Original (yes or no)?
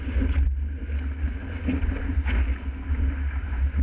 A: yes